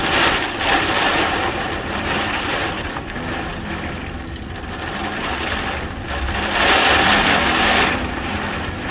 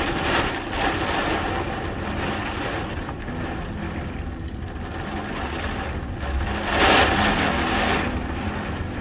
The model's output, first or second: first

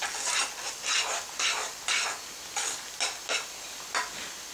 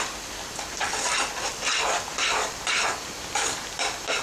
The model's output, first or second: second